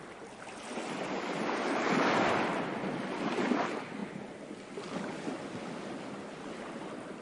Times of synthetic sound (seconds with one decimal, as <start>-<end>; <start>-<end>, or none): none